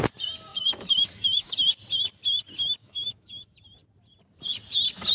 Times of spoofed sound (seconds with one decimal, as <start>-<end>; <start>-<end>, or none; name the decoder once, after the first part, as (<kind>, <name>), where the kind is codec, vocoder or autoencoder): 0.5-1.7 (autoencoder, DAC-VAE); 2.8-3.4